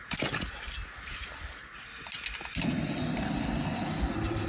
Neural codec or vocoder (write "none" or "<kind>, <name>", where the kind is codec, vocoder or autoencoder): none